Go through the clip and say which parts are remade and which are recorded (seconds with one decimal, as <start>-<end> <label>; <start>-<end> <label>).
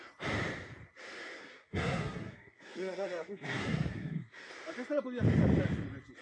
0.0-1.4 recorded; 1.4-4.5 remade; 4.5-6.2 recorded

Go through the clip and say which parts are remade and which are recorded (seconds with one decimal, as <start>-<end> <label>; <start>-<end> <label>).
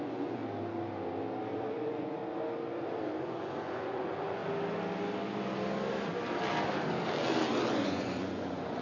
0.0-0.4 remade; 0.4-1.6 recorded; 1.6-2.2 remade; 2.2-3.2 recorded; 3.2-4.4 remade; 4.4-7.7 recorded; 7.7-8.8 remade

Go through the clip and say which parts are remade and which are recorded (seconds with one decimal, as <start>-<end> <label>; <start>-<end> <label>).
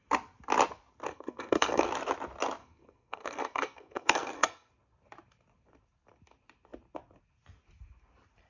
0.0-1.1 recorded; 1.1-1.9 remade; 1.9-2.6 recorded; 2.6-4.7 remade; 4.7-8.5 recorded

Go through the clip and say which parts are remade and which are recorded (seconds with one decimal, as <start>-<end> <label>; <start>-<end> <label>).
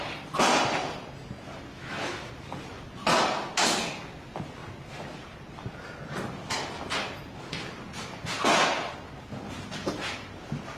0.0-1.7 recorded; 1.7-2.3 remade; 2.3-10.8 recorded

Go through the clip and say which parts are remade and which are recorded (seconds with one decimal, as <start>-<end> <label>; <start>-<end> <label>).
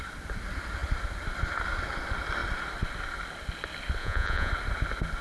0.0-4.0 recorded; 4.0-4.5 remade; 4.5-5.2 recorded